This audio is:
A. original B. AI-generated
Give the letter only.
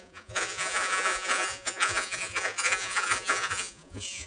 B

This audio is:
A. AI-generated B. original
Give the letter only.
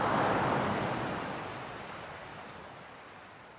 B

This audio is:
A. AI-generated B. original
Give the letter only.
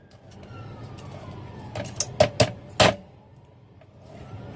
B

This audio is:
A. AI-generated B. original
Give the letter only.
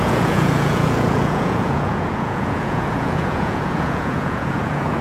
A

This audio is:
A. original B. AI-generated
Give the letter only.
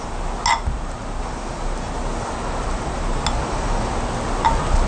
A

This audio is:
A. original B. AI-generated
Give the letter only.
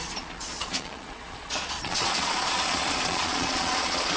B